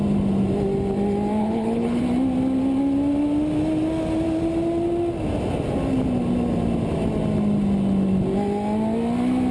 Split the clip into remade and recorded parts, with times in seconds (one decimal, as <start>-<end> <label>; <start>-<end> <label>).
0.0-1.4 recorded; 1.4-2.0 remade; 2.0-9.5 recorded